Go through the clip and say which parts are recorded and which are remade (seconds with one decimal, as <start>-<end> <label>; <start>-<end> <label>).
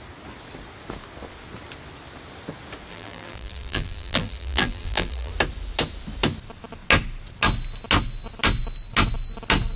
0.0-2.9 recorded; 2.9-5.3 remade; 5.3-9.8 recorded